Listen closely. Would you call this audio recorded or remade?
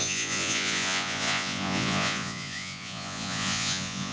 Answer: remade